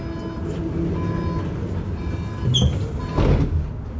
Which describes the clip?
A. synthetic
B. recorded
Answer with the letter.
B